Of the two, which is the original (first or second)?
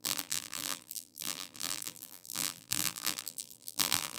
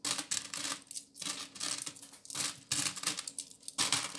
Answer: second